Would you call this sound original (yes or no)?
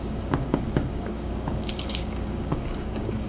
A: no